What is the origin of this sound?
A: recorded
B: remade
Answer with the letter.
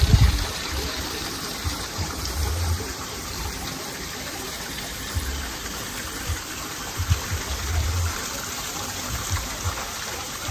B